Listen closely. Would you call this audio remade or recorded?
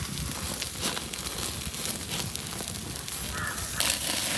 recorded